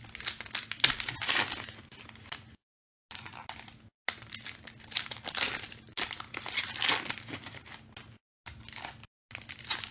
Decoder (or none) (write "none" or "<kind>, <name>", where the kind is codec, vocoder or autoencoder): none